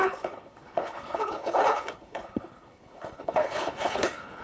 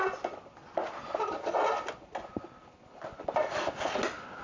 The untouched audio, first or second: second